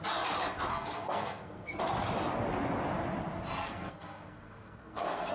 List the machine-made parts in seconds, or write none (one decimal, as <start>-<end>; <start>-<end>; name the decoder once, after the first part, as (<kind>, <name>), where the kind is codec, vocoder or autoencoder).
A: 0.7-1.8 (codec, SNAC); 3.6-5.3